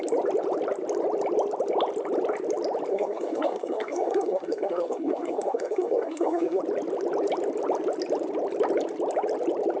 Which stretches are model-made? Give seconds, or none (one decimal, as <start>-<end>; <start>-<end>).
2.9-6.6